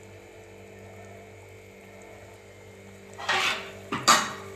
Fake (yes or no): no